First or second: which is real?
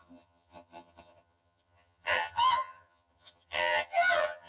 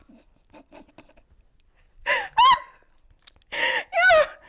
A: second